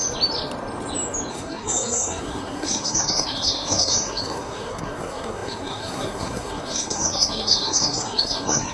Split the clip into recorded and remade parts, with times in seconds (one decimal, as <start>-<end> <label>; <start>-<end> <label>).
0.0-1.3 recorded; 1.3-8.7 remade